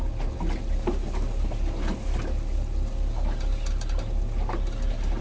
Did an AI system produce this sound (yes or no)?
no